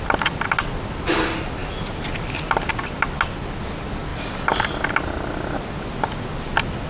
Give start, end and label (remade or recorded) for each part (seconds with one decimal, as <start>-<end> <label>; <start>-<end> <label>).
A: 0.0-6.9 recorded